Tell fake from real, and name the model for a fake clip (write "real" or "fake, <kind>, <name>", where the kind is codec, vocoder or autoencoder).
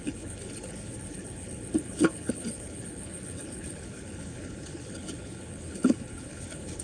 fake, codec, HILCodec